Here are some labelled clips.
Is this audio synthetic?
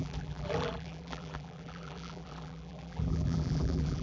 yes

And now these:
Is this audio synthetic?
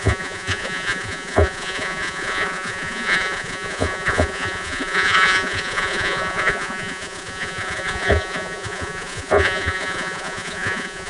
yes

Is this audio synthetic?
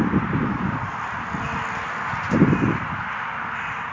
no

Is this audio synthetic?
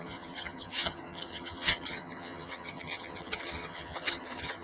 yes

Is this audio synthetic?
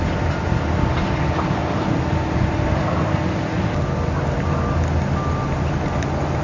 no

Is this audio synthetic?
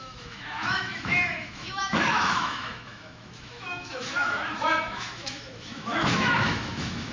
yes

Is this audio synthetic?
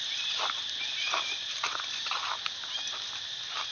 no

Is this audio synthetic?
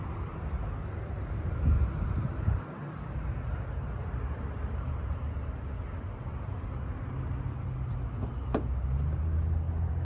no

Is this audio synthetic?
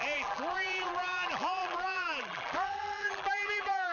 yes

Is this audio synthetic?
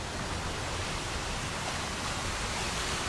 no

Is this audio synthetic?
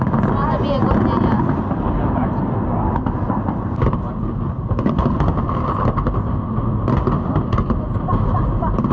no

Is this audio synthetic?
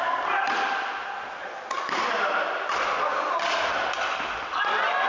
no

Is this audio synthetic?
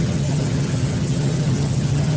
yes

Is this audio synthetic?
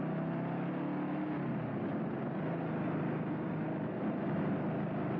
no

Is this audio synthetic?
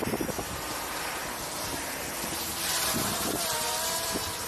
yes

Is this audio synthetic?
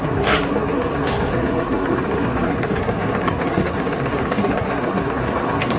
yes